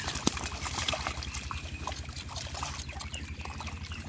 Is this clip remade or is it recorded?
recorded